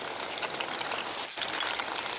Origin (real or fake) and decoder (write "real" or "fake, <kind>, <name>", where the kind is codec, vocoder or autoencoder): real